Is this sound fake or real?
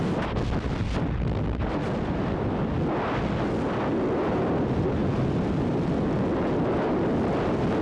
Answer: real